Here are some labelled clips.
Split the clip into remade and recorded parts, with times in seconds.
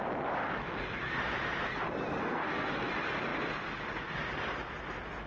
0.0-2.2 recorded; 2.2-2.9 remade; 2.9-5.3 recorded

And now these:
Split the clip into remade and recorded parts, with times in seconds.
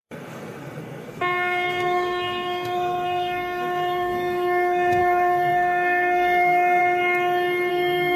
0.0-6.8 remade; 6.8-7.7 recorded; 7.7-8.2 remade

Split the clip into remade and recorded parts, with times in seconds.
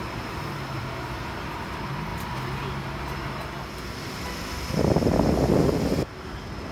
0.0-6.7 recorded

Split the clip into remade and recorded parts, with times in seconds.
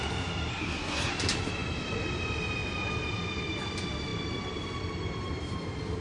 0.0-0.5 recorded; 0.5-1.1 remade; 1.1-6.0 recorded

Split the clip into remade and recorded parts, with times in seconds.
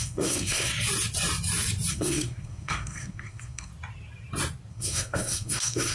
0.0-0.7 remade; 0.7-1.9 recorded; 1.9-3.7 remade; 3.7-4.7 recorded; 4.7-5.9 remade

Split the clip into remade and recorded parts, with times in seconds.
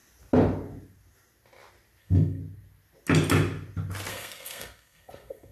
0.0-2.0 recorded; 2.0-2.4 remade; 2.4-4.1 recorded; 4.1-5.5 remade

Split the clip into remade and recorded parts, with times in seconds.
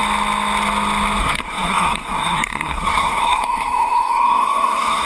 0.0-1.2 recorded; 1.2-5.1 remade